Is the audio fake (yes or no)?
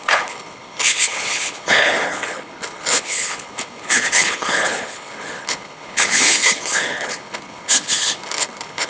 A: yes